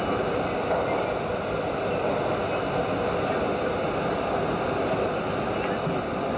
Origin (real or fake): real